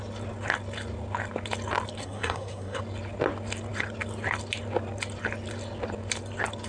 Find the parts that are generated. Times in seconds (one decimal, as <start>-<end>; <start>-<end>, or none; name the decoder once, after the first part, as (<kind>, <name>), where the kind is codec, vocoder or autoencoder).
2.0-2.8 (codec, SNAC)